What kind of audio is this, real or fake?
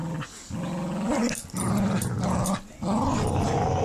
real